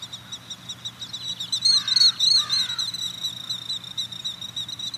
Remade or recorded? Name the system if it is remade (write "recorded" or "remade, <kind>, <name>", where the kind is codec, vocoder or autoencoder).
recorded